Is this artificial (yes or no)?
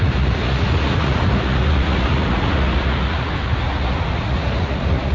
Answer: yes